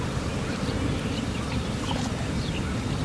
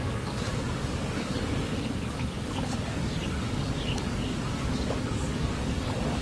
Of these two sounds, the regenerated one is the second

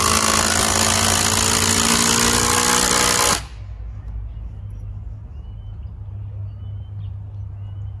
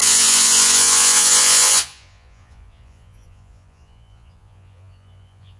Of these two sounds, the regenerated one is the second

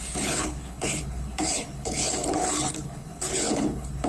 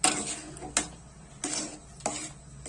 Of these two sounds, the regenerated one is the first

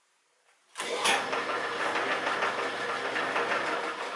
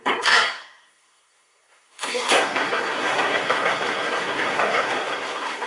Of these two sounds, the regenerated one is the second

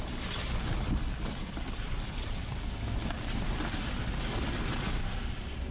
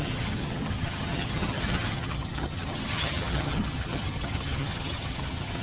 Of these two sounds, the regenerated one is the second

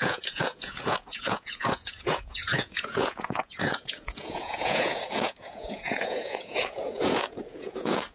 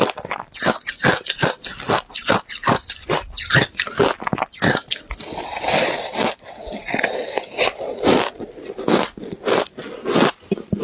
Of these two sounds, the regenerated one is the first